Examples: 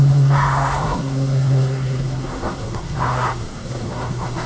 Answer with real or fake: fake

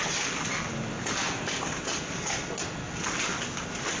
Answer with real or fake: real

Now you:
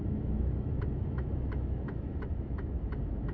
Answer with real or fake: fake